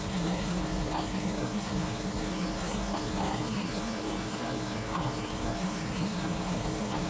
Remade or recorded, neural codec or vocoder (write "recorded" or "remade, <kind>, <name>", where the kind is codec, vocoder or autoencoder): remade, codec, SNAC